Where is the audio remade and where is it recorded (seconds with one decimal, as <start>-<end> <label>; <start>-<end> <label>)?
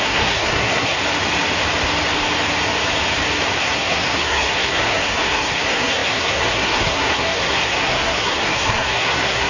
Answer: 0.0-1.0 remade; 1.0-3.6 recorded; 3.6-9.5 remade